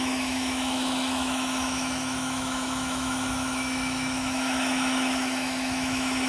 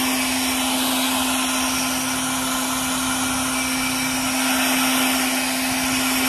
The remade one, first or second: first